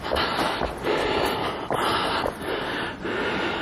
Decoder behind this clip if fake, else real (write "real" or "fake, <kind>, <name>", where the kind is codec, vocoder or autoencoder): real